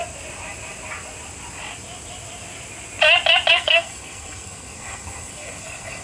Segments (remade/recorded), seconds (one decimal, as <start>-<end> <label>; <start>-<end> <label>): 0.0-3.5 recorded; 3.5-6.0 remade